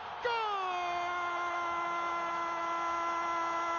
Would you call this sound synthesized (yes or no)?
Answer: no